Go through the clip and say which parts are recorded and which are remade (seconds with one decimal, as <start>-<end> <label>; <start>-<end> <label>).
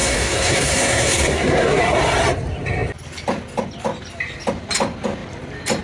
0.0-1.8 remade; 1.8-5.8 recorded